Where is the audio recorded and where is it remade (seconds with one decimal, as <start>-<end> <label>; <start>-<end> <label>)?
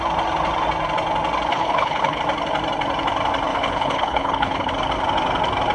0.0-1.5 recorded; 1.5-2.2 remade; 2.2-3.5 recorded; 3.5-4.7 remade; 4.7-5.7 recorded